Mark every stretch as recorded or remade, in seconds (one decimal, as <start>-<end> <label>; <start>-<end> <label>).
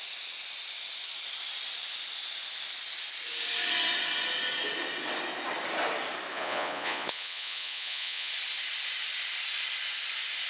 0.0-6.3 recorded; 6.3-8.3 remade; 8.3-10.5 recorded